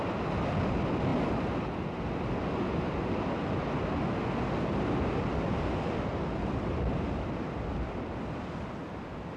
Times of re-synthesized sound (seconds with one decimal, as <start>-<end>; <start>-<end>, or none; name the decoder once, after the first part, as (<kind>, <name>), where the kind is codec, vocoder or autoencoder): none